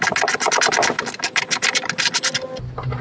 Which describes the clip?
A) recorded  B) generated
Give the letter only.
A